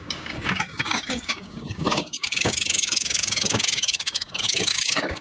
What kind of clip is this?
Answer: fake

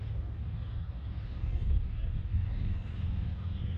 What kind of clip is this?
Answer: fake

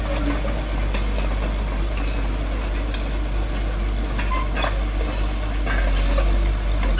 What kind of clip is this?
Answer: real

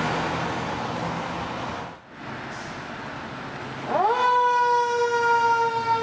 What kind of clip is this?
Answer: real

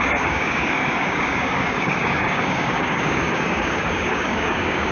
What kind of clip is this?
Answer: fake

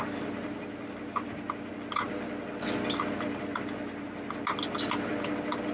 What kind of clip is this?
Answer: real